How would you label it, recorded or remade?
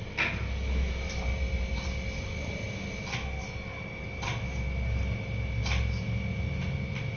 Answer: recorded